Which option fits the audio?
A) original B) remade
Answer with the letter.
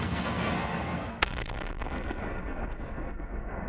B